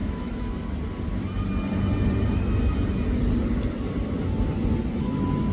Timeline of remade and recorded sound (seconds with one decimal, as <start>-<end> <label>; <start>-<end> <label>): 0.0-0.5 remade; 0.5-5.5 recorded